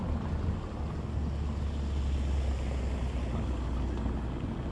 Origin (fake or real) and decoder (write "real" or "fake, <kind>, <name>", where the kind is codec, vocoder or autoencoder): real